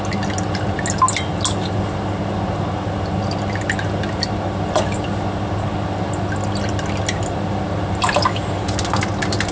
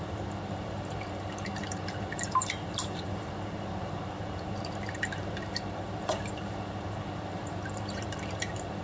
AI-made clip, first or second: second